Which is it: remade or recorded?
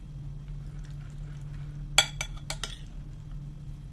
recorded